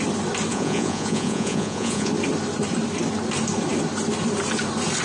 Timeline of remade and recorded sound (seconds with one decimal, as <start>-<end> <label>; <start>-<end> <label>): 0.0-0.5 recorded; 0.5-2.1 remade; 2.1-5.0 recorded